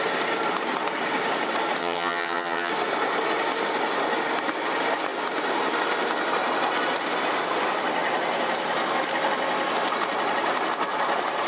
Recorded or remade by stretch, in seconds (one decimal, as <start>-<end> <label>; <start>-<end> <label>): 0.0-1.8 recorded; 1.8-2.7 remade; 2.7-11.5 recorded